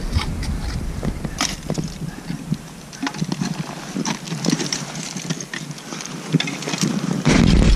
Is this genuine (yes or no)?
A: yes